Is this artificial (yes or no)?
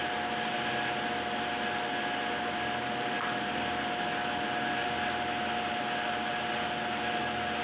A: no